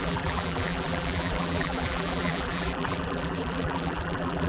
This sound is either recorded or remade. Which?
remade